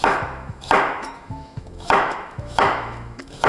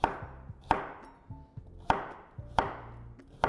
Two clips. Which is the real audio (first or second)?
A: second